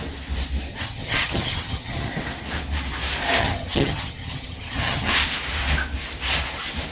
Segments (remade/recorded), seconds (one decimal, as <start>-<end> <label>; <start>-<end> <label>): 0.0-0.7 recorded; 0.7-2.1 remade; 2.1-3.4 recorded; 3.4-5.1 remade; 5.1-6.9 recorded